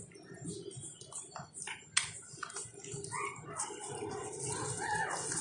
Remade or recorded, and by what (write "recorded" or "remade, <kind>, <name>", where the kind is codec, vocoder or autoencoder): recorded